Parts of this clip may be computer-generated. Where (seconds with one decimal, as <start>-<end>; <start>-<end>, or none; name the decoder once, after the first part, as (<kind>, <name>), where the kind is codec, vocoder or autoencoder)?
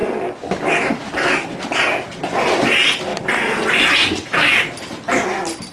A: 3.1-4.6 (vocoder, BigVGAN v2)